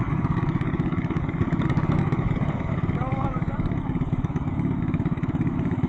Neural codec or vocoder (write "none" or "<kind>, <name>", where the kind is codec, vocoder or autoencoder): codec, DAC